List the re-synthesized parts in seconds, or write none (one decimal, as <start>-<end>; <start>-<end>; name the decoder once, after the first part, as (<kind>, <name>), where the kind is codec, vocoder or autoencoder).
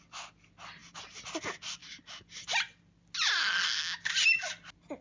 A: none